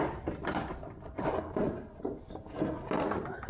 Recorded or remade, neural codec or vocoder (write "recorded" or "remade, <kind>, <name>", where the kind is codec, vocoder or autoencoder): recorded